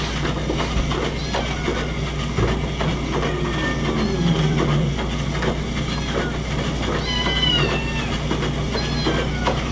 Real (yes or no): yes